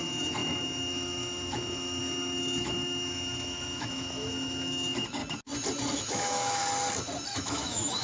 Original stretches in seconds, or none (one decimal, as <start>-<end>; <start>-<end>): 5.2-5.9; 6.6-7.3